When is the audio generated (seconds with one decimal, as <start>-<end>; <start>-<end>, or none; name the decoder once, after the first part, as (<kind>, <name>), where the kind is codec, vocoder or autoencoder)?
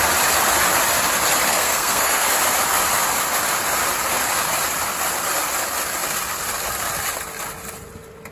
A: 1.5-2.3 (codec, SNAC)